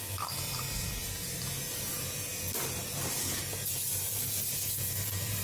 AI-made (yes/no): yes